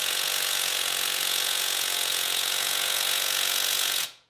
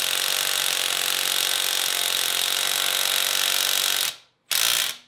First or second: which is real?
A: second